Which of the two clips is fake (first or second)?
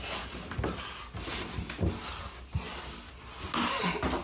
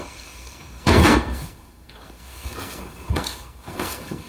second